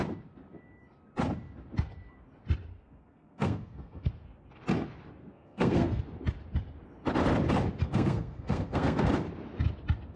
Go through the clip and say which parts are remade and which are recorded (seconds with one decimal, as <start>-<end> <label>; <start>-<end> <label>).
0.0-2.7 recorded; 2.7-4.1 remade; 4.1-5.2 recorded; 5.2-6.0 remade; 6.0-7.8 recorded; 7.8-9.1 remade; 9.1-10.2 recorded